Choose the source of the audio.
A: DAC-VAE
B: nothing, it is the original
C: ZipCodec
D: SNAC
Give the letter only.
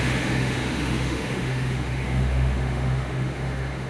A